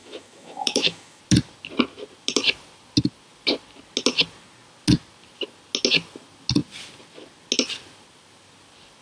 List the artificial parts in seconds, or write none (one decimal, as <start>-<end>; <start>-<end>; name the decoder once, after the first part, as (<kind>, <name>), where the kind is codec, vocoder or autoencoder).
0.0-1.2 (autoencoder, DAC-VAE)